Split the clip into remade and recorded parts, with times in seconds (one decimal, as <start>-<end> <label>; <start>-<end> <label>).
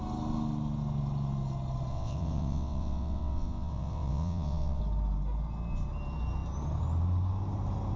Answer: 0.0-1.9 recorded; 1.9-4.8 remade; 4.8-8.0 recorded